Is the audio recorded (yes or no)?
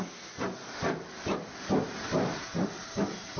yes